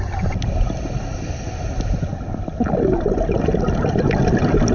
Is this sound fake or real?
real